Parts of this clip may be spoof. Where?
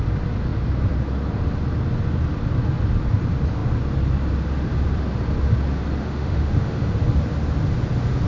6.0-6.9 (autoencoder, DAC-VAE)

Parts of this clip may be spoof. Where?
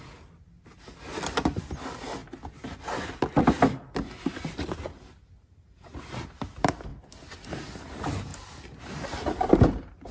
none